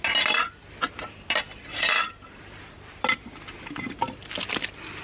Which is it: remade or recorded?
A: recorded